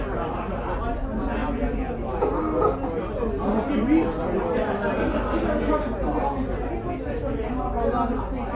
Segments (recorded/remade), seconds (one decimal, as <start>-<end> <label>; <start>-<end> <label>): 0.0-8.6 recorded